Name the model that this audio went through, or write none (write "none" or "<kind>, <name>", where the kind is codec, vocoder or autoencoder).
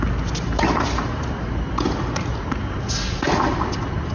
none